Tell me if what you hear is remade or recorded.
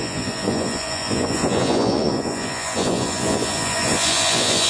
remade